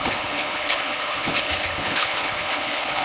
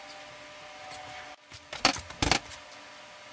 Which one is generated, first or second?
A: first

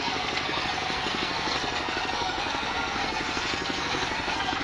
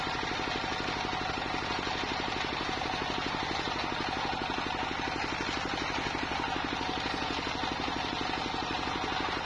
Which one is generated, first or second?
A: first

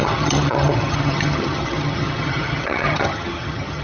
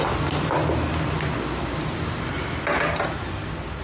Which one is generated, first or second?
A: first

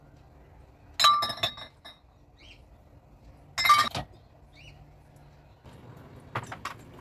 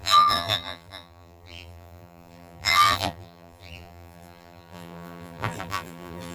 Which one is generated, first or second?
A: second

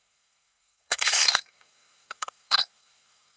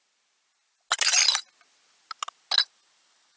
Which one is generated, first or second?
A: first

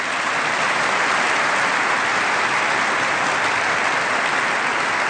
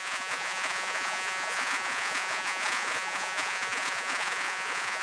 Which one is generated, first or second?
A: second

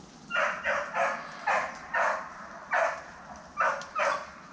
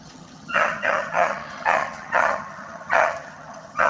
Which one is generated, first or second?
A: second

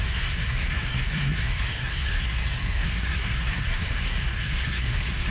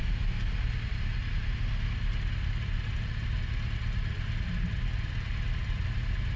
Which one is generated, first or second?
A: first